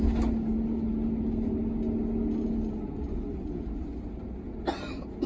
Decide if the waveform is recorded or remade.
recorded